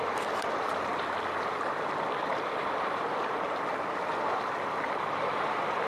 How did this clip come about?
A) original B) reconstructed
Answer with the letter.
B